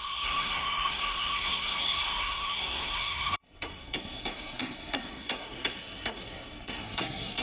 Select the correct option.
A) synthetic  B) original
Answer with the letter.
A